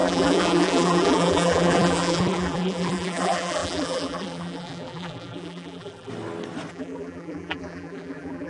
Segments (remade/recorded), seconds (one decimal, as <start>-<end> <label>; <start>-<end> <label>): 0.0-6.1 remade; 6.1-6.7 recorded; 6.7-8.5 remade